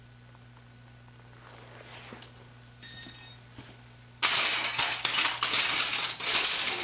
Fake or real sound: real